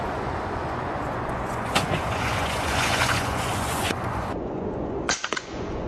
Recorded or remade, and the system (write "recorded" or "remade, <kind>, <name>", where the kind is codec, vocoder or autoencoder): remade, vocoder, Vocos